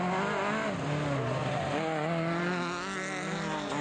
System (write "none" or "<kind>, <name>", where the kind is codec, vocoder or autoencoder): none